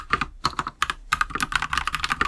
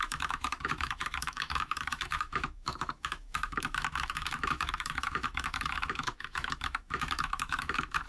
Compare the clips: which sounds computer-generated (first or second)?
second